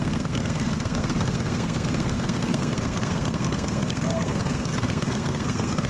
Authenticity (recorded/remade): remade